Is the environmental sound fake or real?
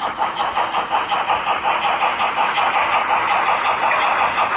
real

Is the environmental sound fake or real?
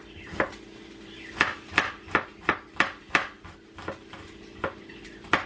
fake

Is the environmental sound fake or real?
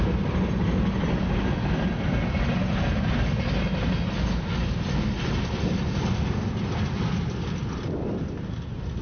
real